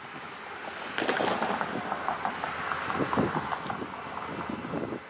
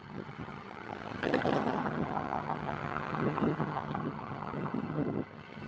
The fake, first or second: second